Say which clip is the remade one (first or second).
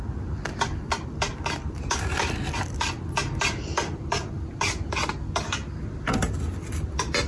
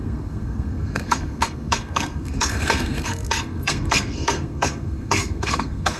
second